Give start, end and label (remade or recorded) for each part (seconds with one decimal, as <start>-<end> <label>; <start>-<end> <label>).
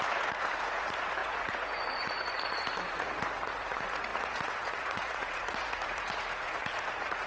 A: 0.0-7.3 remade